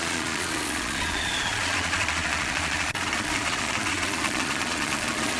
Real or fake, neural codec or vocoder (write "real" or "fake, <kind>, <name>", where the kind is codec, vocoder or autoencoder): fake, vocoder, Vocos